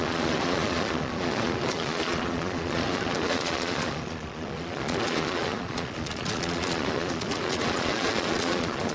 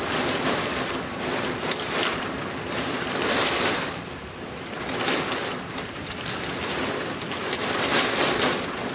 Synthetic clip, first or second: first